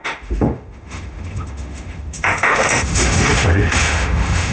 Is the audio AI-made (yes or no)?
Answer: yes